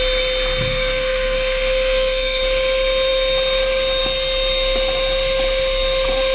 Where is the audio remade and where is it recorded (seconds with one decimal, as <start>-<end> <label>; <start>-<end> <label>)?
0.0-0.7 recorded; 0.7-2.4 remade; 2.4-6.3 recorded